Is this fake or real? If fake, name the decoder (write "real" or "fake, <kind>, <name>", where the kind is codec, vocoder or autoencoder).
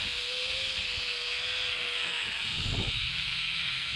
fake, codec, SNAC